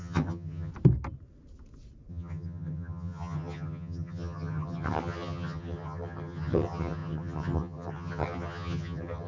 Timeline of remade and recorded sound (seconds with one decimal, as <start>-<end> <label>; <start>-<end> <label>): 0.0-0.7 remade; 0.7-2.1 recorded; 2.1-9.3 remade